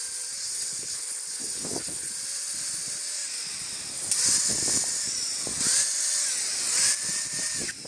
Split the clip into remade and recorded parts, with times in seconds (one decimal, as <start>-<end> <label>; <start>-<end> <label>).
0.0-0.4 recorded; 0.4-2.1 remade; 2.1-7.9 recorded